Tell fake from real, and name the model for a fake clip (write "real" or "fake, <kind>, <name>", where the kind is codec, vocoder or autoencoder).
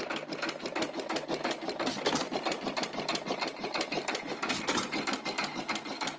real